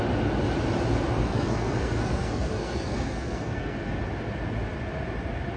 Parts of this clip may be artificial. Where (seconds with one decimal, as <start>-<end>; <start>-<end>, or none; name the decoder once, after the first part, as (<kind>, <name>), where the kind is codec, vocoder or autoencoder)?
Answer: 1.3-3.9 (codec, SNAC)